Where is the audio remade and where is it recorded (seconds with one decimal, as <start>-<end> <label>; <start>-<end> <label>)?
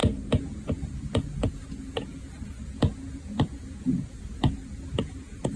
0.0-5.6 remade